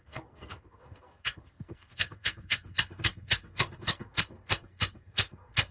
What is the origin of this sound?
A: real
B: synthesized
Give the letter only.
B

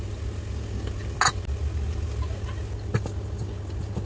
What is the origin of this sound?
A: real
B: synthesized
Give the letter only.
A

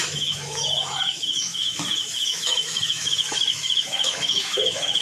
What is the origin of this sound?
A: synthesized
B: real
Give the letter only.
A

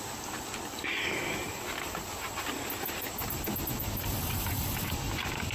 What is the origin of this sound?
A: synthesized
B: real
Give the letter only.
B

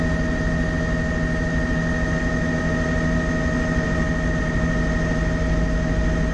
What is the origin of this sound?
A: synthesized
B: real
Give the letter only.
B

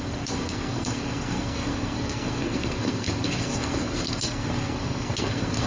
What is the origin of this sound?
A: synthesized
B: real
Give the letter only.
A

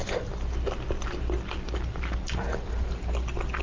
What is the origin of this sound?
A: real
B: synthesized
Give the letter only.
A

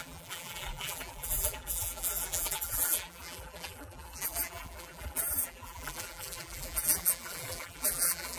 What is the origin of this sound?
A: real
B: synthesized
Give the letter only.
B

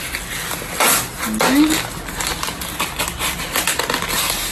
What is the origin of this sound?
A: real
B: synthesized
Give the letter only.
A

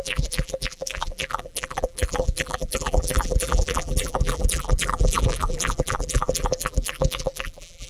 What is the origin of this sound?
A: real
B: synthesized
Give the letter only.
B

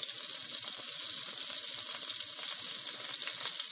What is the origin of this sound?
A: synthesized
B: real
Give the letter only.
B